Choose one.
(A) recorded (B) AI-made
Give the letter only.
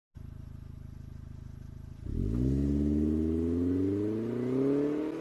A